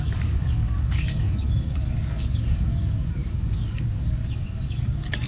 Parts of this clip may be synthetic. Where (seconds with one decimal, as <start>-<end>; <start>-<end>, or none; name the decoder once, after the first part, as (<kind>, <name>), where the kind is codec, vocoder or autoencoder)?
0.0-5.3 (codec, DAC)